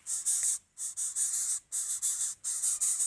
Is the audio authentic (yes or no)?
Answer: yes